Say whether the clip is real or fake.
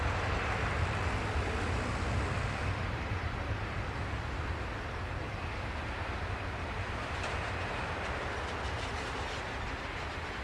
real